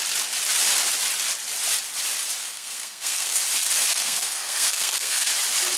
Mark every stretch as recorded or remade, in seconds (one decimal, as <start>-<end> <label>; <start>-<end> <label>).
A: 0.0-2.4 recorded; 2.4-3.4 remade; 3.4-3.9 recorded; 3.9-5.3 remade; 5.3-5.8 recorded